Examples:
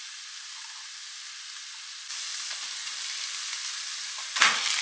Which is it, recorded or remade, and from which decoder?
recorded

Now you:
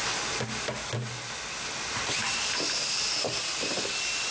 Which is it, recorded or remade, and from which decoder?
recorded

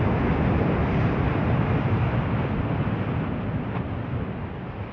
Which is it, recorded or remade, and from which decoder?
recorded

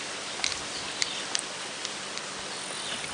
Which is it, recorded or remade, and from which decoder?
recorded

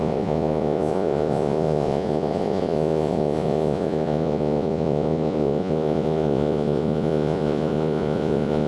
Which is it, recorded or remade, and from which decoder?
remade, vocoder, Vocos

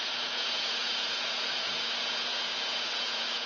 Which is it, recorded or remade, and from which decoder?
remade, vocoder, Vocos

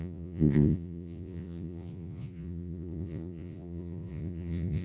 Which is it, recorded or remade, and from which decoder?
remade, vocoder, Vocos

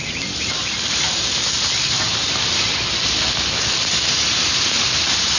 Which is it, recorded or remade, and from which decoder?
recorded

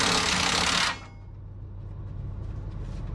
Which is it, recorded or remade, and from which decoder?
recorded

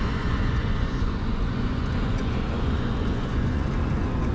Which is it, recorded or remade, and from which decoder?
remade, vocoder, Vocos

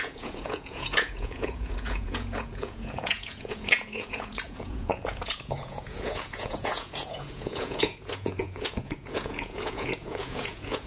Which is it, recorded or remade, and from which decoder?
remade, vocoder, Vocos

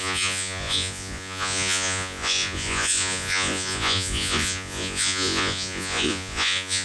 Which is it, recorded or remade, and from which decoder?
remade, vocoder, Vocos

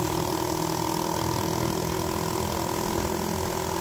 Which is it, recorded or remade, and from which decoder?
recorded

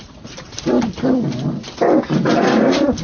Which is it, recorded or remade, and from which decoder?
recorded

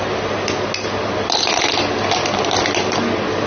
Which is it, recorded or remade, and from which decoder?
recorded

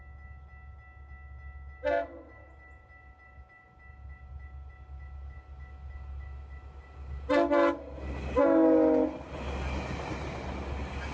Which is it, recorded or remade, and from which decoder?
recorded